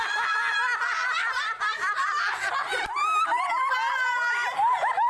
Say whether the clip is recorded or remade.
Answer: recorded